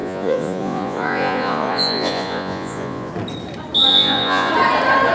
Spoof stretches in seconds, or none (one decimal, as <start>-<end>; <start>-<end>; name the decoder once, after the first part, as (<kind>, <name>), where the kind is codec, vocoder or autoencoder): 0.0-3.1 (vocoder, Vocos); 3.9-4.5